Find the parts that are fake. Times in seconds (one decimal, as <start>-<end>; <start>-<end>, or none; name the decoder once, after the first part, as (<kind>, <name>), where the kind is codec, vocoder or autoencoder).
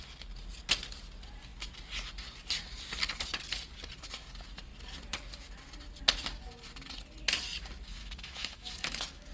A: 8.0-9.3 (autoencoder, DAC-VAE)